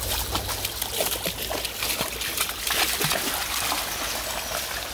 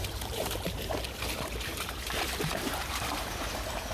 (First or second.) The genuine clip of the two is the first